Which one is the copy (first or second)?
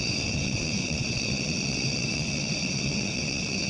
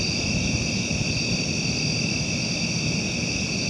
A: first